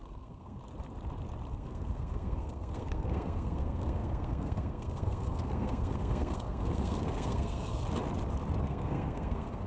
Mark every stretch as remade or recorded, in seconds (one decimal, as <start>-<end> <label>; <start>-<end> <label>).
0.0-0.6 remade; 0.6-1.5 recorded; 1.5-7.8 remade; 7.8-8.6 recorded; 8.6-9.7 remade